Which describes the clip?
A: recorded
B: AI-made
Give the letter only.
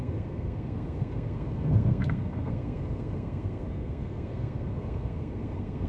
B